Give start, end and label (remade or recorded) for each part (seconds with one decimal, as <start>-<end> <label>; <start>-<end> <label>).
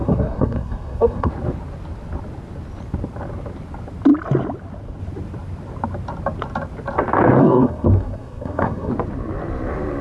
0.0-1.3 remade; 1.3-7.4 recorded; 7.4-8.9 remade; 8.9-10.0 recorded